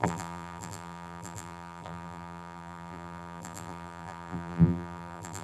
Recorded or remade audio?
remade